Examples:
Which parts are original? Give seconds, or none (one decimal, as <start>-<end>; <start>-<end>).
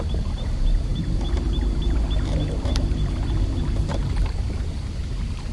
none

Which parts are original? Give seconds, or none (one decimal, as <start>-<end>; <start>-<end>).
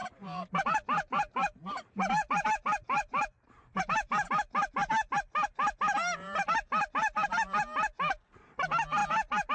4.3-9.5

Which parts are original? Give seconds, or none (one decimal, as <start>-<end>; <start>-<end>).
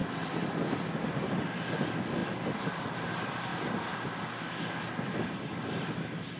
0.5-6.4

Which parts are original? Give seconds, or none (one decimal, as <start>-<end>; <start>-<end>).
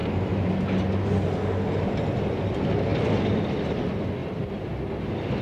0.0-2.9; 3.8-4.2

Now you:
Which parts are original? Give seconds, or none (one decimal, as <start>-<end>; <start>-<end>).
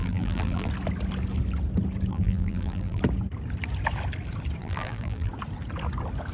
0.7-2.1; 3.0-4.6; 5.3-6.3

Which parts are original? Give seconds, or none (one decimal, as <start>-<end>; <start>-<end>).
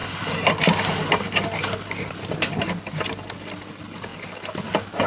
0.0-5.1